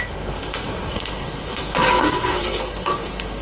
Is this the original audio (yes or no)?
no